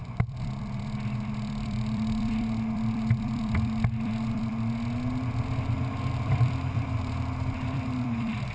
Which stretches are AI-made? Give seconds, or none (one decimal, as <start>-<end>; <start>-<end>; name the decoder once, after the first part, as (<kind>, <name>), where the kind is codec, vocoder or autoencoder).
0.0-4.5 (vocoder, BigVGAN v2); 6.1-8.5